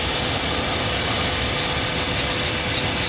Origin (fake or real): real